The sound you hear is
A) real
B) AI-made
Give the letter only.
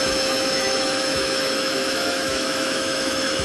B